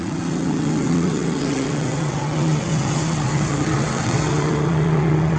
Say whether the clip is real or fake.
fake